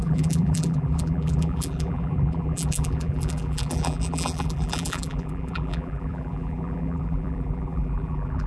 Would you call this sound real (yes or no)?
no